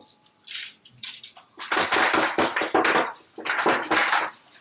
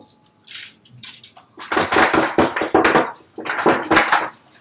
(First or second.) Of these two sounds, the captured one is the second